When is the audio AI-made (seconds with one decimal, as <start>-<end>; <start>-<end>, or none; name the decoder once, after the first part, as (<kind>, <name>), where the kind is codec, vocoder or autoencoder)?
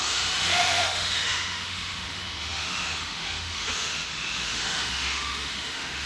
0.0-6.1 (autoencoder, DAC-VAE)